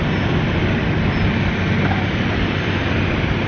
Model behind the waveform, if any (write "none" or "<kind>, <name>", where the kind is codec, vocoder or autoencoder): none